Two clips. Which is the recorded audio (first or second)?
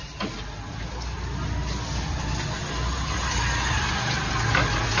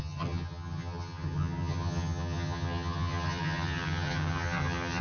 first